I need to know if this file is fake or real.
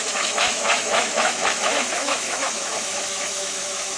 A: fake